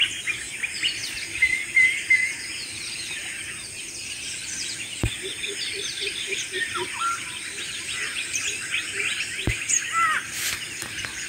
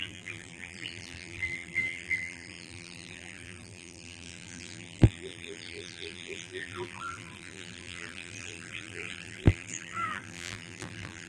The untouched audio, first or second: first